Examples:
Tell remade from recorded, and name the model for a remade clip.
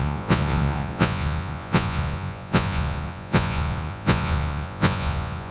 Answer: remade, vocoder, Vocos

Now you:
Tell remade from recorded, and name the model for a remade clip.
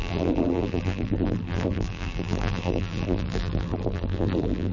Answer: remade, vocoder, BigVGAN v2